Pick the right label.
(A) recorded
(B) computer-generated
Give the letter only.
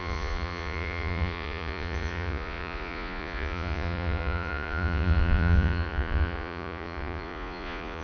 B